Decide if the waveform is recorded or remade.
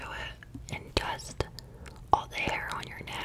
recorded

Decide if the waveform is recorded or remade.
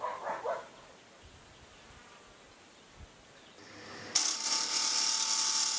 recorded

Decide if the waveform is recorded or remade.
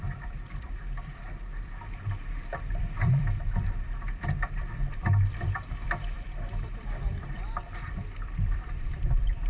remade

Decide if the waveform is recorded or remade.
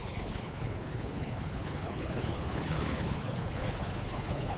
remade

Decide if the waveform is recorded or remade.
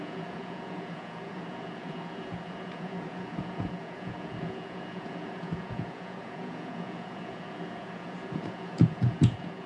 remade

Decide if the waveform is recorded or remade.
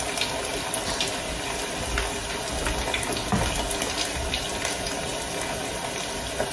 recorded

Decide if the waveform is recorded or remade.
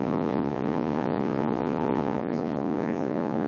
remade